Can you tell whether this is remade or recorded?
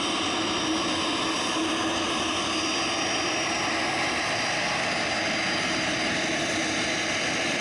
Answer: recorded